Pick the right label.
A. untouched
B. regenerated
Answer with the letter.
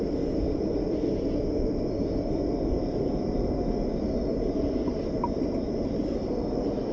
A